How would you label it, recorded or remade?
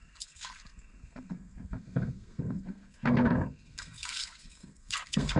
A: remade